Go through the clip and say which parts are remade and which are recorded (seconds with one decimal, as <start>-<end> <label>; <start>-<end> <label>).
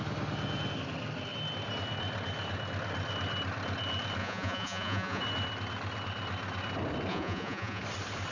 0.0-4.2 recorded; 4.2-5.2 remade; 5.2-7.1 recorded; 7.1-7.8 remade; 7.8-8.3 recorded